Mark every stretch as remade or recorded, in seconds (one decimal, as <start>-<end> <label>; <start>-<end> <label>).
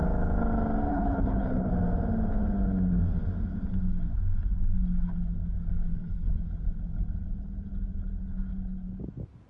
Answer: 0.0-0.9 recorded; 0.9-1.7 remade; 1.7-5.9 recorded; 5.9-6.4 remade; 6.4-9.5 recorded